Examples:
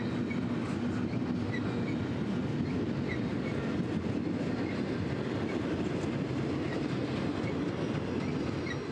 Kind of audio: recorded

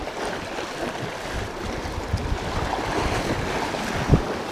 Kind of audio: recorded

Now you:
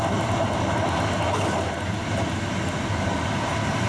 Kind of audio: recorded